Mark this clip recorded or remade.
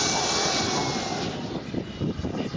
recorded